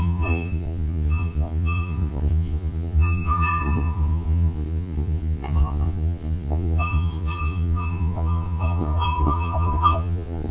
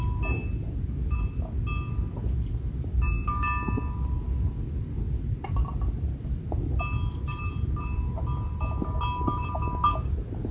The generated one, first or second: first